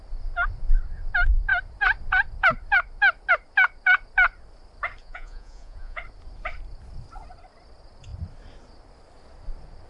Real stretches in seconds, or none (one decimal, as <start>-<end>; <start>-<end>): 0.0-5.0; 6.0-9.9